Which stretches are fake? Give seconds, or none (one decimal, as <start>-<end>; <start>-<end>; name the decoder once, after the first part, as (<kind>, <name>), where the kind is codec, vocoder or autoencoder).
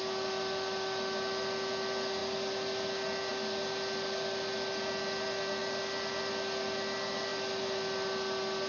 none